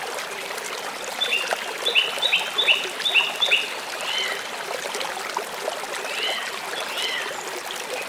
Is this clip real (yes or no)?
yes